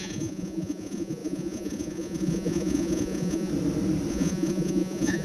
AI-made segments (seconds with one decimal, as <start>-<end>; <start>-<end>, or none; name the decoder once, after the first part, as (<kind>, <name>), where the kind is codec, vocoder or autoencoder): 0.0-3.5 (vocoder, Vocos); 4.1-5.2